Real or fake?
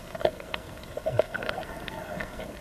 fake